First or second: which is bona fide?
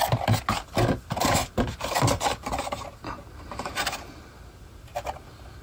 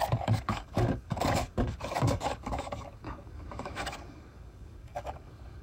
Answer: first